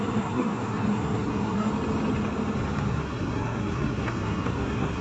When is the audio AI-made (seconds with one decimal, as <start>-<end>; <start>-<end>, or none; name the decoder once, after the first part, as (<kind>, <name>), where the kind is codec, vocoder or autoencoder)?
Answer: 0.0-1.7 (codec, SNAC); 2.9-5.0